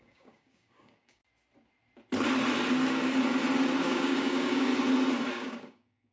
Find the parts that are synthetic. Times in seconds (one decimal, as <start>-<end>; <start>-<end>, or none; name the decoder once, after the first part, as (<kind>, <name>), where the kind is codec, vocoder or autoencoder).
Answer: 0.0-1.2 (codec, DAC); 3.8-4.7; 5.3-6.1